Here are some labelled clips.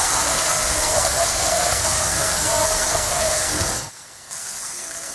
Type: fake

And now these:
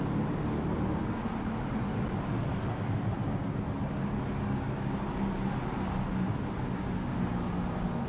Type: real